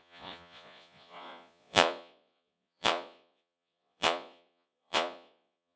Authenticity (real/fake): fake